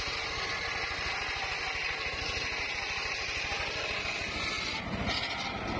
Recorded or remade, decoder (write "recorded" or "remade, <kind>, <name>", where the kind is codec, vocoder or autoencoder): recorded